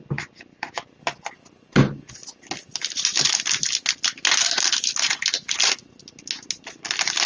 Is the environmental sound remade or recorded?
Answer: recorded